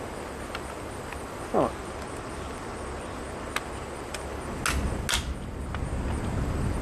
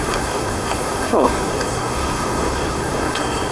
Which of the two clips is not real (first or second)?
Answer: second